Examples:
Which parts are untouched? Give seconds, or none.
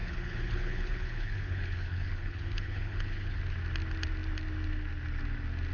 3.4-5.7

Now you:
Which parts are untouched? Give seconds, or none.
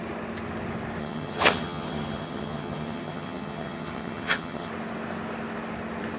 0.0-1.0; 4.7-6.2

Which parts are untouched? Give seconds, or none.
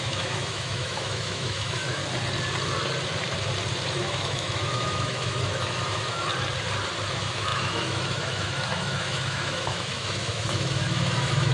2.0-3.9; 6.3-7.1